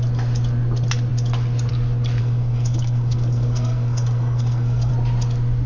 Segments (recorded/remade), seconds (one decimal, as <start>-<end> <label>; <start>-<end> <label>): 0.0-2.2 recorded; 2.2-4.9 remade; 4.9-5.7 recorded